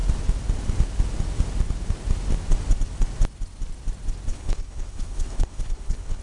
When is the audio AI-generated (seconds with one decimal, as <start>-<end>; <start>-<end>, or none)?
4.3-6.2